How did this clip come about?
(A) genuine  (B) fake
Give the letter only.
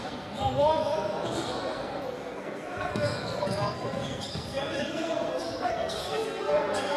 B